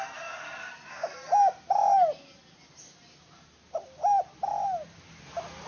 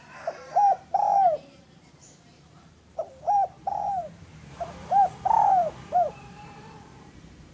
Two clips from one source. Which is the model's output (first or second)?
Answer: second